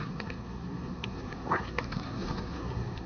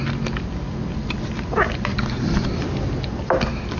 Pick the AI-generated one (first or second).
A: first